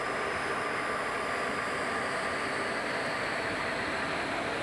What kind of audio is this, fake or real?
real